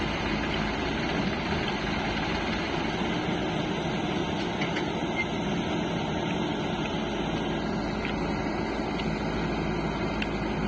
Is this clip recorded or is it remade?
recorded